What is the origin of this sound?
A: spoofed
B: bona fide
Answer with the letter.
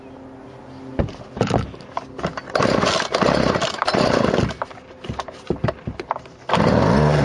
B